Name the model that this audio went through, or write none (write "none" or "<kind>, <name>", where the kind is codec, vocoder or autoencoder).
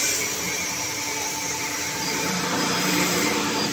vocoder, BigVGAN v2